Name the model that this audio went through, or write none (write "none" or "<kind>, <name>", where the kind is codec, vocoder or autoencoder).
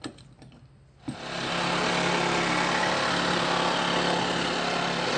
none